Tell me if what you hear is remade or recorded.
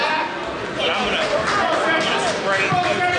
recorded